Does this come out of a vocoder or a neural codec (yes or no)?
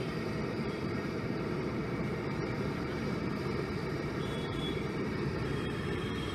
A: yes